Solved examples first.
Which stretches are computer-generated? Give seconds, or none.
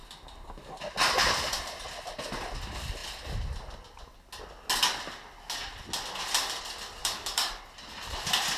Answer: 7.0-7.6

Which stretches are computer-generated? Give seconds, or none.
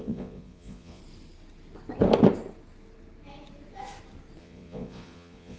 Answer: 0.0-1.0; 4.4-5.6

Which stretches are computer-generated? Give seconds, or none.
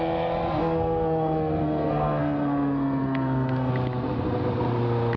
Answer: 0.6-3.7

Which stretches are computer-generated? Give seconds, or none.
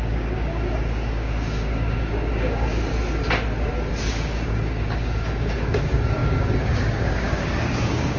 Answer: 0.0-2.9; 3.9-8.2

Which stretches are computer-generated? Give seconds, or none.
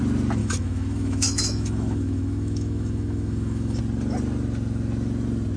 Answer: 0.4-3.8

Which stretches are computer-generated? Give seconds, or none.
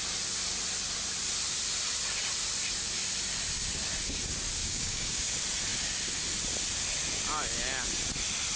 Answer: 4.6-5.3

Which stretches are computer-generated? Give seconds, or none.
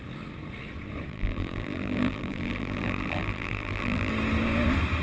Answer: 1.1-4.1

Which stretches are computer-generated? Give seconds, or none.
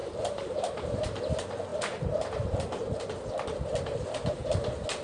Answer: 0.0-1.2; 1.7-3.1